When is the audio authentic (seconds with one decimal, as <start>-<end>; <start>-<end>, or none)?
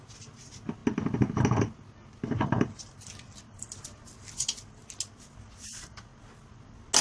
0.8-2.4; 4.8-5.6; 6.1-7.0